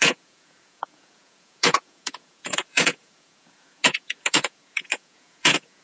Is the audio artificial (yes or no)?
yes